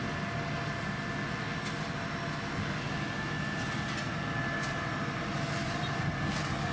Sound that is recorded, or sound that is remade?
recorded